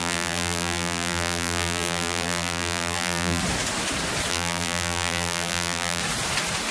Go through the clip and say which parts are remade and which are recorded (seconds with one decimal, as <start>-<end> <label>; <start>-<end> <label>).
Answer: 0.0-3.4 remade; 3.4-4.3 recorded; 4.3-6.0 remade; 6.0-6.7 recorded